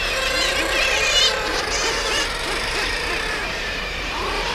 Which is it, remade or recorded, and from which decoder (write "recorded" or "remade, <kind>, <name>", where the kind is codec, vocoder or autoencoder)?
remade, vocoder, BigVGAN v2